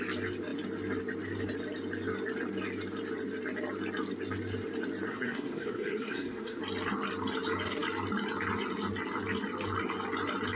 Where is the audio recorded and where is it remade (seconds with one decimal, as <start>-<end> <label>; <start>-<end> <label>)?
0.0-5.1 recorded; 5.1-6.6 remade; 6.6-10.6 recorded